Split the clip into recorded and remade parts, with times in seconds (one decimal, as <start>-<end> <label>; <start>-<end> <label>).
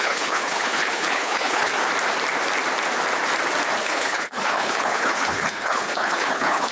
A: 0.0-1.7 remade; 1.7-3.8 recorded; 3.8-6.7 remade